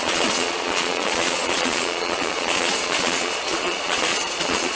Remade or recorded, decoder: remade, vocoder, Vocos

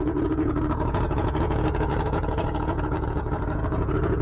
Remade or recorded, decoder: remade, vocoder, Vocos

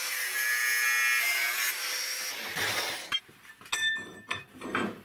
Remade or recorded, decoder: recorded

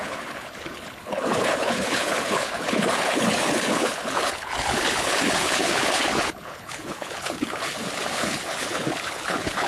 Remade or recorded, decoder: remade, codec, HILCodec